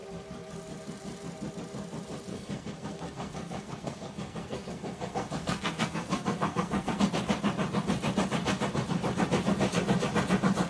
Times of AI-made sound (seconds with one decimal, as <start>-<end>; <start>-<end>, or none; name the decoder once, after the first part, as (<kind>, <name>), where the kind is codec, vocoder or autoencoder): 2.3-7.0 (codec, SNAC)